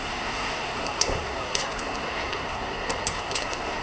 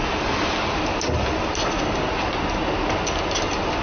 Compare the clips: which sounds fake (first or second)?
first